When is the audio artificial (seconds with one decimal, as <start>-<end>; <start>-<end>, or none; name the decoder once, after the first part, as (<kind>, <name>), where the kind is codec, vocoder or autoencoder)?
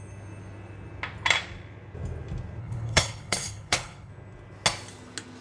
2.6-4.1 (codec, HILCodec)